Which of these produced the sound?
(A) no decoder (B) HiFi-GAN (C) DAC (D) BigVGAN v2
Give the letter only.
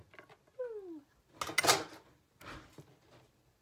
A